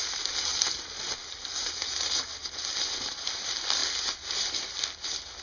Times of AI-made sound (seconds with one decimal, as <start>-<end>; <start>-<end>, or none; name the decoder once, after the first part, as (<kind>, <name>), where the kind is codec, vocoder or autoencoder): none